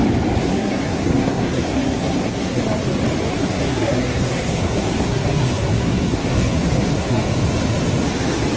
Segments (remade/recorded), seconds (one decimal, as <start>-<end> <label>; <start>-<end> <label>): 0.0-0.4 recorded; 0.4-2.6 remade; 2.6-3.3 recorded; 3.3-7.2 remade; 7.2-8.6 recorded